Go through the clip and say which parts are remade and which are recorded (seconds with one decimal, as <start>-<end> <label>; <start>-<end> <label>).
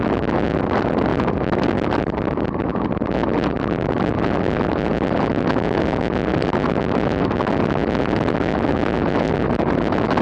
0.0-10.2 recorded